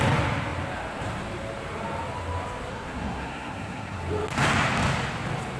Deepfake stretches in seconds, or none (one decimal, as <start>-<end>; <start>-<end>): 2.7-4.0